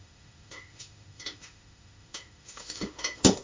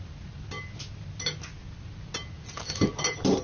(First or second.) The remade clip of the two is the first